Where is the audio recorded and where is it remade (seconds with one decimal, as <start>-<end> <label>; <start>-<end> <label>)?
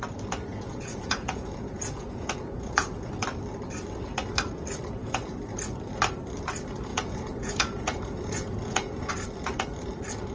0.0-0.5 recorded; 0.5-3.1 remade; 3.1-5.0 recorded; 5.0-5.5 remade; 5.5-6.9 recorded; 6.9-9.1 remade; 9.1-10.3 recorded